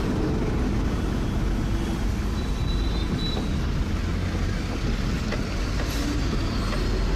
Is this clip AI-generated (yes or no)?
no